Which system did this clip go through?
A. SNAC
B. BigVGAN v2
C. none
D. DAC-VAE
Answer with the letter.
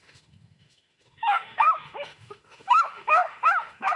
D